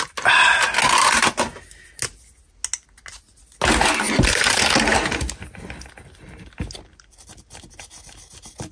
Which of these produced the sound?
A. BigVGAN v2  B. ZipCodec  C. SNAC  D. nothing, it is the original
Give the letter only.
D